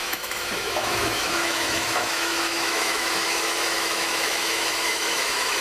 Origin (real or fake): fake